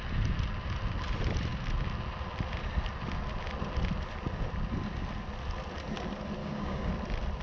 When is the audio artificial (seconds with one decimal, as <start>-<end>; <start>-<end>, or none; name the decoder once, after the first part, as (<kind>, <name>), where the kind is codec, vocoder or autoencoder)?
6.4-6.9 (codec, DAC)